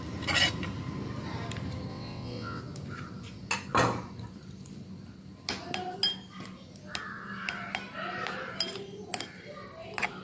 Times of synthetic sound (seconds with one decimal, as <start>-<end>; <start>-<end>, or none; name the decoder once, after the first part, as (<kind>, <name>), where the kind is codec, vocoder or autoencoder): 1.9-2.6 (vocoder, WaveNeXt)